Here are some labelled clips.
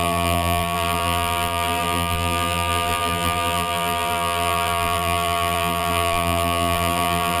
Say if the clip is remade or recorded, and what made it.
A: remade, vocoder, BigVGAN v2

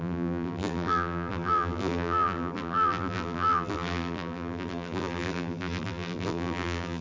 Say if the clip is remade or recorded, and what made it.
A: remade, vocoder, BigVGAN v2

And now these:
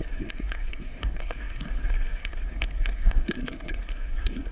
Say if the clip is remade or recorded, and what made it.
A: remade, codec, SNAC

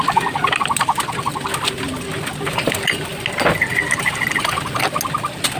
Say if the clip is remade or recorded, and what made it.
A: recorded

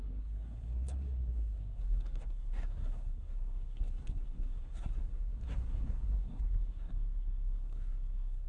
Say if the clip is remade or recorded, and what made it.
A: remade, codec, SNAC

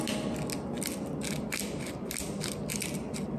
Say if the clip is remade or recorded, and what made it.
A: recorded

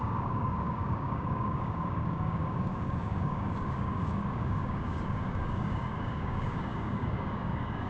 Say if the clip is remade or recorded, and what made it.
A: remade, codec, DAC